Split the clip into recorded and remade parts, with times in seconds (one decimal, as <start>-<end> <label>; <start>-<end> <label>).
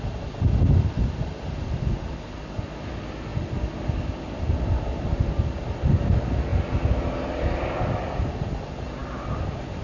0.0-9.8 recorded